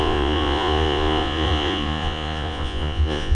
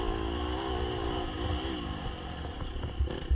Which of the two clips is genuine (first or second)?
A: second